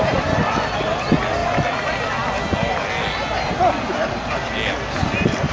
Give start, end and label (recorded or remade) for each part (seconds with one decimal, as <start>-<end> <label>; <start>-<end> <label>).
0.0-5.5 recorded